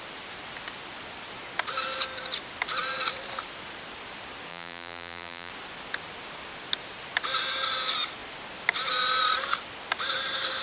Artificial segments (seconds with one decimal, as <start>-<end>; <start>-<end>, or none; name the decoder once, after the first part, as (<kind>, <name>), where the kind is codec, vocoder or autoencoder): 4.5-5.5 (vocoder, BigVGAN v2)